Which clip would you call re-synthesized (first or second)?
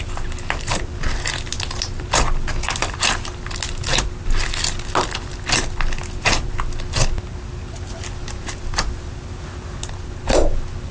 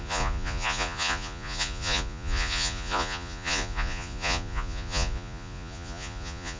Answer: second